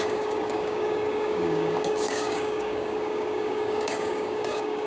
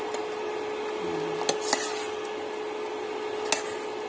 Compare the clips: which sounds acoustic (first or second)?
second